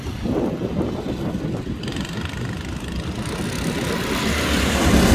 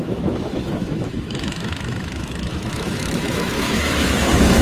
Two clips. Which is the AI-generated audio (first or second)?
second